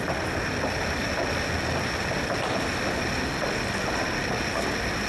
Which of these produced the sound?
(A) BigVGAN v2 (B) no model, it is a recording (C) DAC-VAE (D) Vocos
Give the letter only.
B